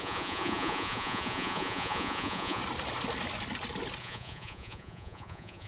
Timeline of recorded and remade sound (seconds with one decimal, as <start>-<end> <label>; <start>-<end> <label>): 0.0-2.6 remade; 2.6-4.0 recorded; 4.0-5.7 remade